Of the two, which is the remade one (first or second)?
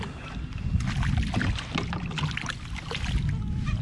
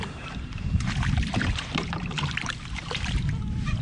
second